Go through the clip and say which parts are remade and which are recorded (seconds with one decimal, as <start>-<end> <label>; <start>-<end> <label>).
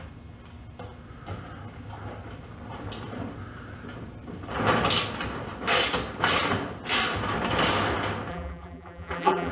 0.0-8.3 recorded; 8.3-9.5 remade